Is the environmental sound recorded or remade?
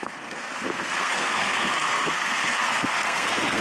remade